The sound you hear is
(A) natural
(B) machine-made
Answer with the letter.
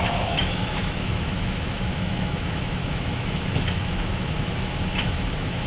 B